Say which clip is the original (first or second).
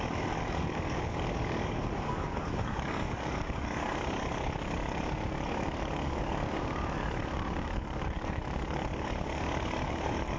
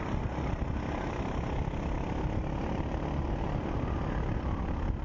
second